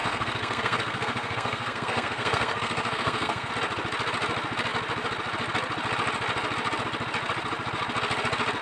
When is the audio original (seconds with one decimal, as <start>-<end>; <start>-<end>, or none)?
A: 3.5-8.6